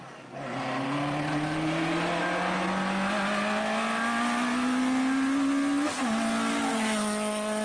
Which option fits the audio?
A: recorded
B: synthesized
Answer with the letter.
A